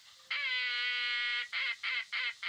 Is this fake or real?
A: real